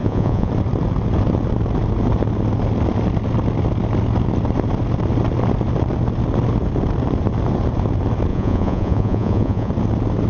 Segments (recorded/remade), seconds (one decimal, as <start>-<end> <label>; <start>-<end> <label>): 0.0-0.5 remade; 0.5-8.3 recorded; 8.3-9.7 remade; 9.7-10.3 recorded